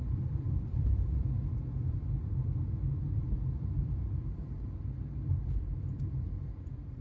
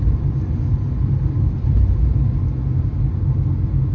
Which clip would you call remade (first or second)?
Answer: first